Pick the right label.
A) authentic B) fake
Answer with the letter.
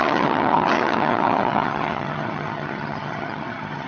B